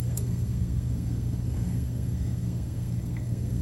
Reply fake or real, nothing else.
fake